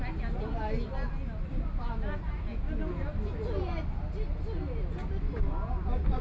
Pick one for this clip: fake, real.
real